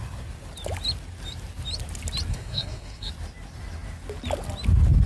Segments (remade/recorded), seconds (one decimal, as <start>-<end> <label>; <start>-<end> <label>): 0.0-2.3 recorded; 2.3-3.1 remade; 3.1-5.1 recorded